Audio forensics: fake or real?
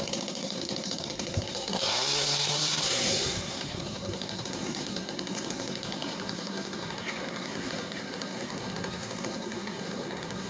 fake